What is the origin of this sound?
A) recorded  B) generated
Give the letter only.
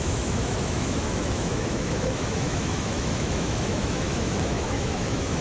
B